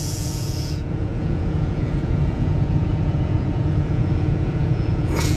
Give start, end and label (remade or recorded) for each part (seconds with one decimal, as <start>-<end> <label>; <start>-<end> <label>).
0.0-5.4 remade